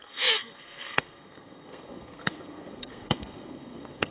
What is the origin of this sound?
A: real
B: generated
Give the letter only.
B